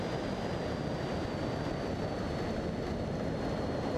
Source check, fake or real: real